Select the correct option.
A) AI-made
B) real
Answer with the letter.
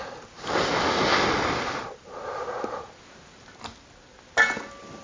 B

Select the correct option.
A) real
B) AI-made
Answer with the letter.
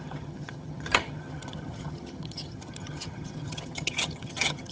B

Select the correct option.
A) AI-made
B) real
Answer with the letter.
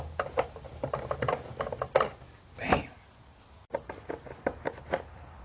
B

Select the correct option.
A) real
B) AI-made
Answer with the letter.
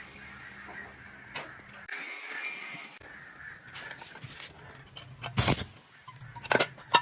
A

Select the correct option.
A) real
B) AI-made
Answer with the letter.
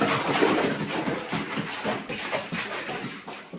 A